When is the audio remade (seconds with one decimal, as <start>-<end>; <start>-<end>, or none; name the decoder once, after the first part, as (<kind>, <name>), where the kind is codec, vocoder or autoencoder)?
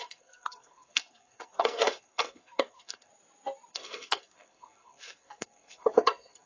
0.0-3.1 (codec, SNAC); 3.7-6.5